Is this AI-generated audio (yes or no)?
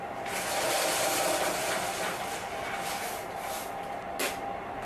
no